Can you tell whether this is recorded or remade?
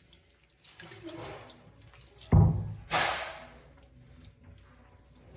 recorded